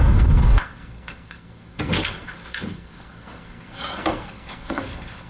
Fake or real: fake